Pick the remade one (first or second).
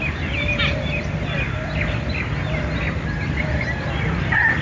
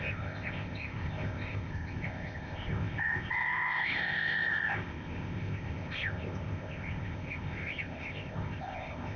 second